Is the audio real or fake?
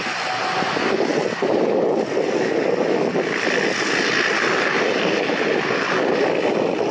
real